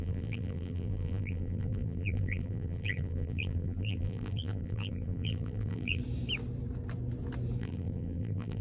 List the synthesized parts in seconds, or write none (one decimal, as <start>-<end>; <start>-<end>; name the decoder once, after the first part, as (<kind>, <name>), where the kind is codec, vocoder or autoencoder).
0.0-6.0 (vocoder, BigVGAN v2); 7.6-8.6